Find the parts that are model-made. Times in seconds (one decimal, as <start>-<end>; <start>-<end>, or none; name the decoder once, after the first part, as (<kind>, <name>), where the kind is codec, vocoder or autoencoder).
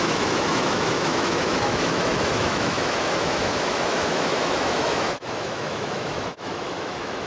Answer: 0.0-7.3 (autoencoder, DAC-VAE)